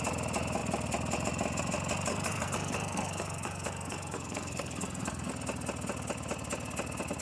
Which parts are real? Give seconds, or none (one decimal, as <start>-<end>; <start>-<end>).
0.0-2.1; 5.3-7.2